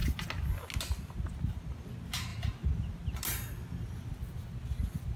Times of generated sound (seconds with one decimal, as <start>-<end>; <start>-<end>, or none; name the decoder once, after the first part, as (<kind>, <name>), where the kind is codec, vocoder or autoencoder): none